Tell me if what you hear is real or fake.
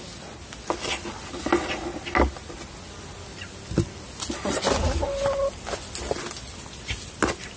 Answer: real